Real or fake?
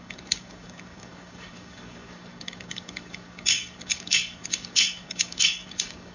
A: fake